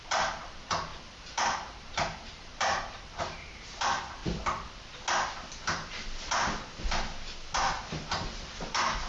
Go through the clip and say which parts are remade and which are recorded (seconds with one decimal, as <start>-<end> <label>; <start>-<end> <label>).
0.0-4.2 remade; 4.2-7.8 recorded; 7.8-9.1 remade